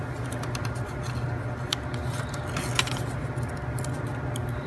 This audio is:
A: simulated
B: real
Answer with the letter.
B